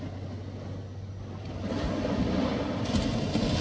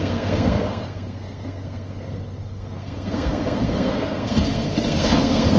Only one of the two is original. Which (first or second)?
first